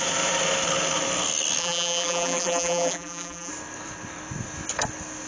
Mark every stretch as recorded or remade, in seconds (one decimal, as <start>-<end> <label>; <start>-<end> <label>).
0.0-1.6 recorded; 1.6-3.5 remade; 3.5-5.3 recorded